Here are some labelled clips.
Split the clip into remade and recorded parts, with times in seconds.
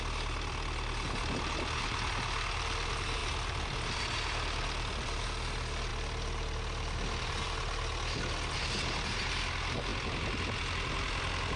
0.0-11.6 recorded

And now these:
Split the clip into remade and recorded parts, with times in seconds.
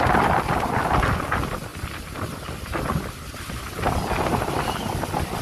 0.0-5.4 recorded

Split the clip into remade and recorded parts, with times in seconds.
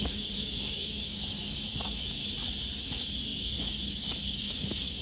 0.0-2.2 remade; 2.2-2.8 recorded; 2.8-5.0 remade